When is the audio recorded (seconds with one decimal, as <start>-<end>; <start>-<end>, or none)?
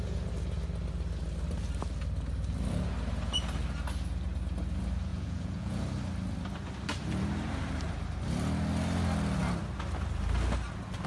0.0-5.1; 5.8-11.1